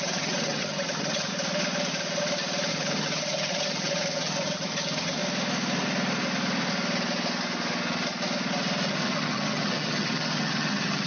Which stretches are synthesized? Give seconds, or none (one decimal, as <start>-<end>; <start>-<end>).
0.0-1.3; 2.7-5.2; 8.9-11.1